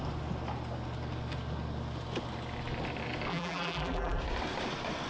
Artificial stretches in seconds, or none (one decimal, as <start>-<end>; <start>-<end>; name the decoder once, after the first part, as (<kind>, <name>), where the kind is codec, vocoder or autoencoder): 3.3-4.2 (vocoder, BigVGAN v2)